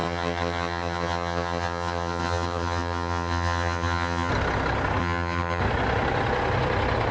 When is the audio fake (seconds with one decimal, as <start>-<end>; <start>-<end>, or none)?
0.0-4.3; 5.0-5.6